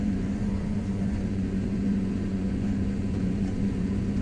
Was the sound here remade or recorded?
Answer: remade